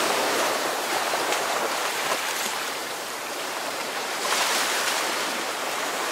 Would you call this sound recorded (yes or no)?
no